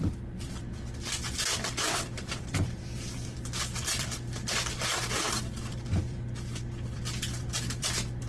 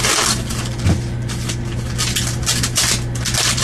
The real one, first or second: second